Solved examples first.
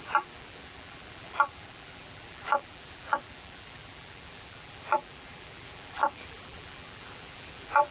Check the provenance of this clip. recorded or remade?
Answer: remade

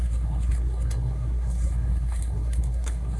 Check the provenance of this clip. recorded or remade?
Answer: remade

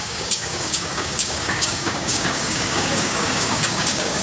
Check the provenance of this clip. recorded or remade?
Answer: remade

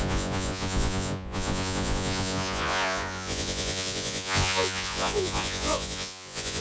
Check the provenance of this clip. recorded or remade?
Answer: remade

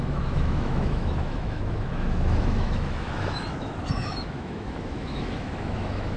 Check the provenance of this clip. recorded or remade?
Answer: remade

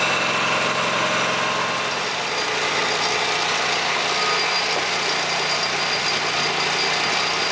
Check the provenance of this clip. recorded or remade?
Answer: recorded